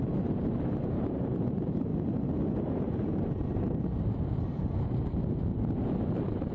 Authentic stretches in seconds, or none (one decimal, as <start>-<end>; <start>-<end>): 1.9-2.5; 5.5-6.1